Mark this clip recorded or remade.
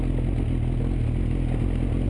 recorded